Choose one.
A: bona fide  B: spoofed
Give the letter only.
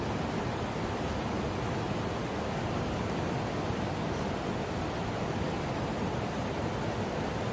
A